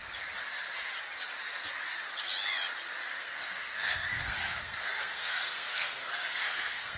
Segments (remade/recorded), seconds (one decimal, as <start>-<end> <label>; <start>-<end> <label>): 0.0-3.1 recorded; 3.1-7.0 remade